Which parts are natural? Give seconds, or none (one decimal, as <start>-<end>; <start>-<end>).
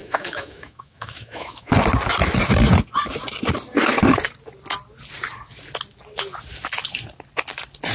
1.7-7.9